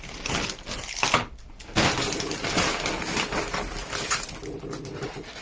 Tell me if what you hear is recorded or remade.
recorded